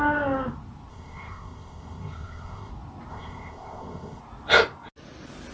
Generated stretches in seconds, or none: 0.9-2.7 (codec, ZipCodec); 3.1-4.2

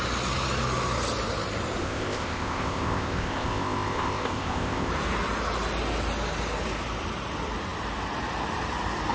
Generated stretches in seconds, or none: 1.8-4.9 (codec, ZipCodec)

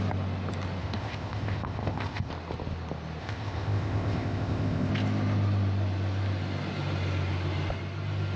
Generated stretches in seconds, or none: 0.8-2.3 (codec, ZipCodec); 3.2-4.9

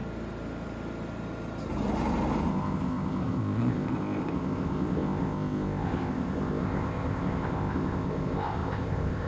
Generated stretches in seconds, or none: 2.5-9.3 (codec, ZipCodec)